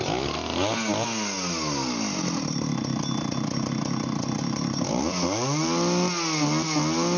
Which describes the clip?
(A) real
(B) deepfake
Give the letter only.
A